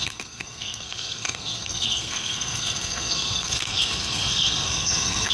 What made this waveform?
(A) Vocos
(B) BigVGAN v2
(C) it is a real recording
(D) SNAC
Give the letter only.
D